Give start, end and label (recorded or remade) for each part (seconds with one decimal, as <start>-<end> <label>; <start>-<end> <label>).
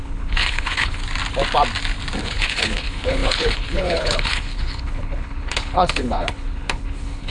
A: 0.0-1.0 remade; 1.0-2.2 recorded; 2.2-7.3 remade